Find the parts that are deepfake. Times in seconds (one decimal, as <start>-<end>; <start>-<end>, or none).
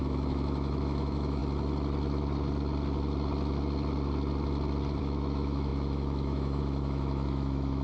0.0-1.4; 5.0-7.8